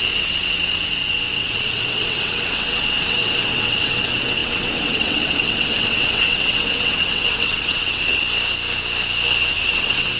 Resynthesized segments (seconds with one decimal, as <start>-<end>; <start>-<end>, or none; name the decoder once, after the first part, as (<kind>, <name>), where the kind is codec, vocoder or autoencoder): 0.0-8.2 (vocoder, WaveNeXt); 9.5-10.2